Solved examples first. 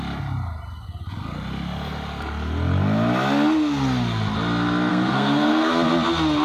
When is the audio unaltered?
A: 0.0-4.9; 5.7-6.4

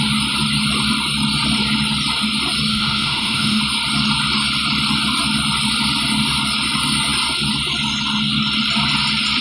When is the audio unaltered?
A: 0.0-2.7; 3.6-9.4

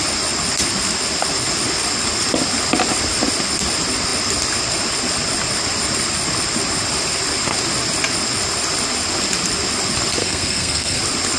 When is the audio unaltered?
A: 0.0-10.2; 11.0-11.4

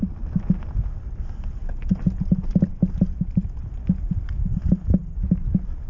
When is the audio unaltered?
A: 2.7-3.2

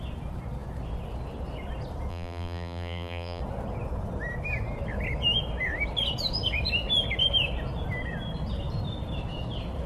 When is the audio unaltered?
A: 0.0-2.1; 3.4-9.9